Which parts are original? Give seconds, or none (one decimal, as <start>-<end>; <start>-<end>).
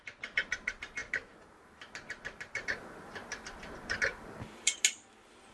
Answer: 0.0-5.5